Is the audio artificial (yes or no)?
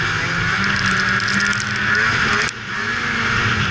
no